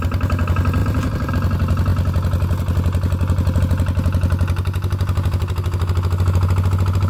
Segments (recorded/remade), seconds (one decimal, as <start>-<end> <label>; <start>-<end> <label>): 0.0-0.8 recorded; 0.8-1.3 remade; 1.3-7.1 recorded